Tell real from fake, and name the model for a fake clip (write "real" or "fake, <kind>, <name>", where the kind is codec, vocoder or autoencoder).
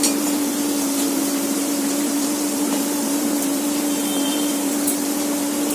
fake, vocoder, BigVGAN v2